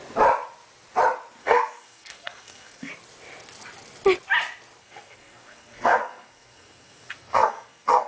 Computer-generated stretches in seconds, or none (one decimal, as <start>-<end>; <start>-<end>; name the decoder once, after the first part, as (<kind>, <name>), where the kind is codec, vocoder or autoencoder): 1.4-2.9 (codec, SNAC); 4.8-8.1